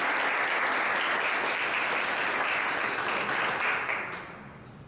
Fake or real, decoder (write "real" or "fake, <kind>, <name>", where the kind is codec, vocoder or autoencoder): real